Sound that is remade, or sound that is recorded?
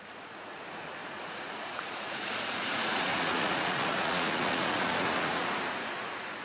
remade